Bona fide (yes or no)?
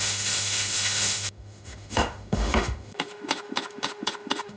no